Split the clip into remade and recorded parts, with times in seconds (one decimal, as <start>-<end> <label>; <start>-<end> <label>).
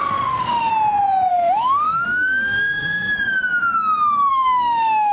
0.0-0.7 remade; 0.7-1.3 recorded; 1.3-3.1 remade; 3.1-4.3 recorded; 4.3-5.1 remade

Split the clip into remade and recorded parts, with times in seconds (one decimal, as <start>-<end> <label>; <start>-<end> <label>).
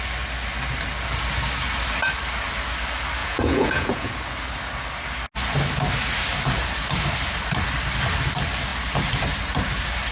0.0-3.2 recorded; 3.2-4.1 remade; 4.1-10.1 recorded